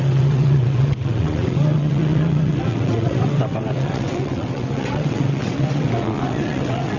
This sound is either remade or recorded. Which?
remade